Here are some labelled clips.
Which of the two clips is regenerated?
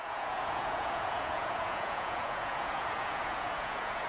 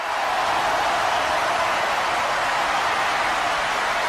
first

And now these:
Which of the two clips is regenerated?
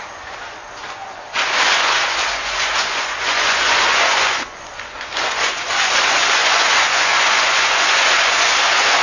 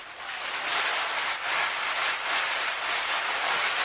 first